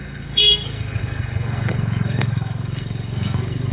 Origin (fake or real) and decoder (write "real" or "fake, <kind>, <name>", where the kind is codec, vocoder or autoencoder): fake, codec, SNAC